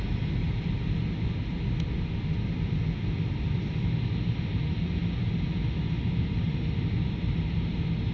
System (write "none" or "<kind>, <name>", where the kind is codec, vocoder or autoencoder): none